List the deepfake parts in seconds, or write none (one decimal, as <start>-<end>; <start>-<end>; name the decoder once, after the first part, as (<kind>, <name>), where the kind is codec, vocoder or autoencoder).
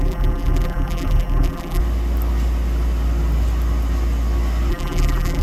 0.0-1.8 (vocoder, BigVGAN v2); 4.7-5.4